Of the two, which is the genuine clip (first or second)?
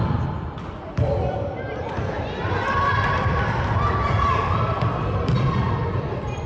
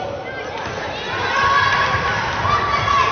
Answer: second